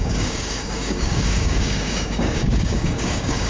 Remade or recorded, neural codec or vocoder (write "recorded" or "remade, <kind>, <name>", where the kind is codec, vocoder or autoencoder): remade, codec, DAC